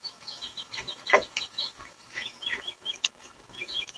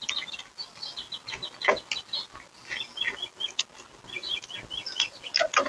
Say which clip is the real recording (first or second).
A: second